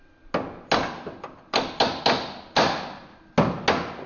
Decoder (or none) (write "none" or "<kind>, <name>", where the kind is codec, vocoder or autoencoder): none